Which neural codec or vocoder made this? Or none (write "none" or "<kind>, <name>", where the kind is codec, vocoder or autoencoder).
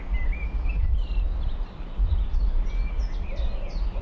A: none